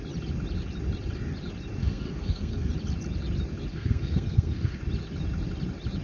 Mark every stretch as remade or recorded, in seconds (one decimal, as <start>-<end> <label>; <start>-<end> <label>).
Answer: 0.0-1.8 recorded; 1.8-2.7 remade; 2.7-3.7 recorded; 3.7-4.8 remade; 4.8-6.0 recorded

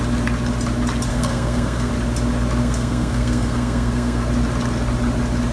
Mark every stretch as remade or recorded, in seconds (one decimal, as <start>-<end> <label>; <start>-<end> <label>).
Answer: 0.0-1.1 recorded; 1.1-1.9 remade; 1.9-2.6 recorded; 2.6-4.3 remade; 4.3-5.5 recorded

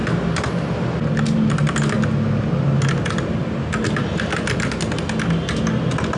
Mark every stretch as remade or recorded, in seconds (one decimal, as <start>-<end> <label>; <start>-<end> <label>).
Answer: 0.0-6.2 recorded

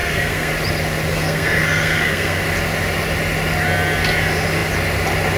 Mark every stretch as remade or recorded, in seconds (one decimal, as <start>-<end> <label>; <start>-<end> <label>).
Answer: 0.0-0.5 remade; 0.5-1.1 recorded; 1.1-2.4 remade; 2.4-5.4 recorded

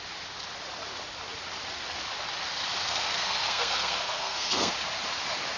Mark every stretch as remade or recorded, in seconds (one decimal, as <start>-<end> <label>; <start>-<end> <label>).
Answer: 0.0-2.8 recorded; 2.8-4.7 remade; 4.7-5.6 recorded